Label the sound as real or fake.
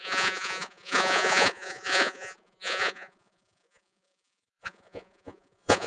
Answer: fake